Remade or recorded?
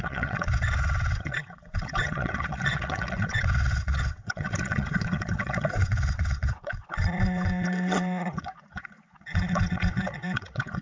remade